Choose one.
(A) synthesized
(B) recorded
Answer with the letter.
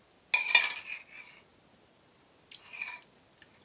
B